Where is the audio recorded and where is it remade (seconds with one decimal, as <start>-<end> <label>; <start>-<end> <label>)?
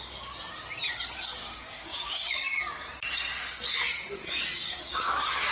0.0-1.4 recorded; 1.4-2.6 remade; 2.6-4.2 recorded; 4.2-5.5 remade